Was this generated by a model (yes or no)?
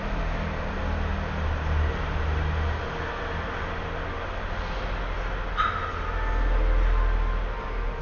no